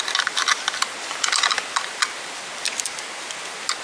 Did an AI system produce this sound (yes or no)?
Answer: no